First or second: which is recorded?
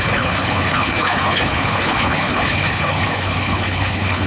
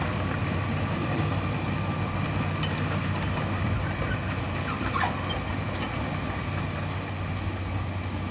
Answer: second